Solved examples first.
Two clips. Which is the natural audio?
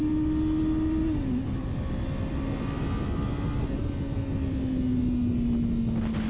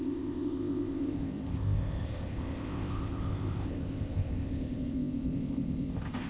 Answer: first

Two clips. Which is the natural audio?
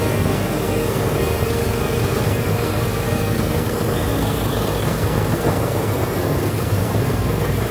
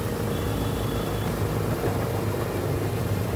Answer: second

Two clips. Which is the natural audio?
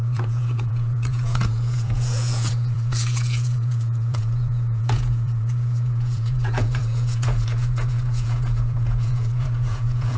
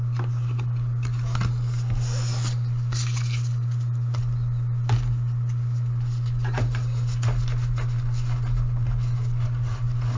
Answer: second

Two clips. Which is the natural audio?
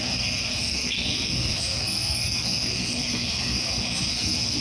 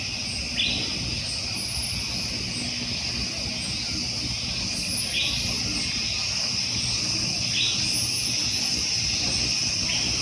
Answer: second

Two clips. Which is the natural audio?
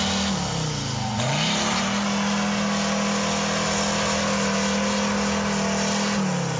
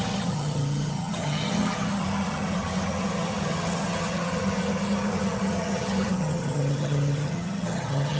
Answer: first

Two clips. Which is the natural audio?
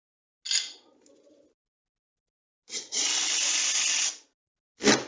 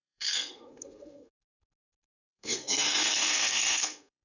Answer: first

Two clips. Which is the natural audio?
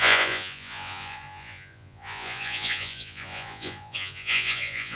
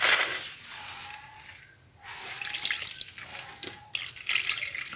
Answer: second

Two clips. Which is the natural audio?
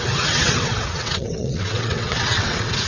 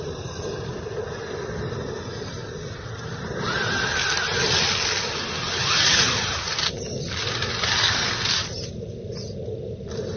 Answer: second